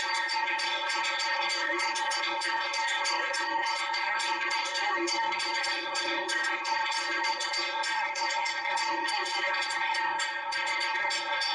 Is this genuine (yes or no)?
no